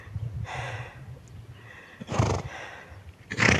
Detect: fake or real real